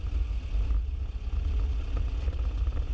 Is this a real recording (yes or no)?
yes